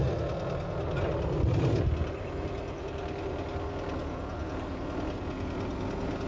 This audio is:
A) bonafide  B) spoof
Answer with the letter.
A